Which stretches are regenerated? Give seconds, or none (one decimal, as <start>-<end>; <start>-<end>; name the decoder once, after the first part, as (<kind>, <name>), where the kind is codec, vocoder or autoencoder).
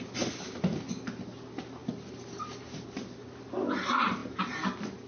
none